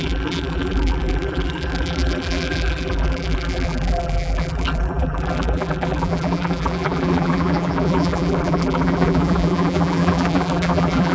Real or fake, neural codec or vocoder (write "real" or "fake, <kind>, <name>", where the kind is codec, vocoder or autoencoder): fake, vocoder, BigVGAN v2